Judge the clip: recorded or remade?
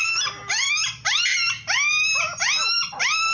recorded